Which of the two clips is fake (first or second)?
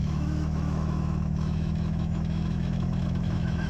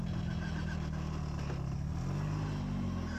first